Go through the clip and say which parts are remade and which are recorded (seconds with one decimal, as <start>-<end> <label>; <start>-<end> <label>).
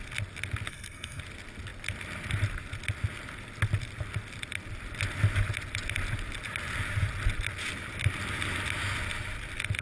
0.0-0.7 recorded; 0.7-1.2 remade; 1.2-9.8 recorded